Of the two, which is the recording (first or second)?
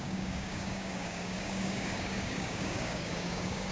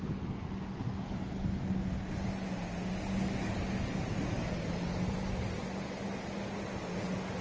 second